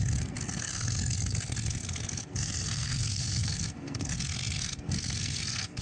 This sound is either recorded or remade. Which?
remade